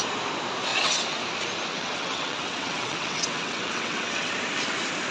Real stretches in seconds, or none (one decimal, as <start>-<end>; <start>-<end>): 0.0-0.7; 1.2-1.7; 4.3-5.1